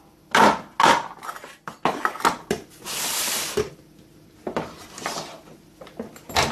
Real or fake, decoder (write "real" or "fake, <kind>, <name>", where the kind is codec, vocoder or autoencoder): real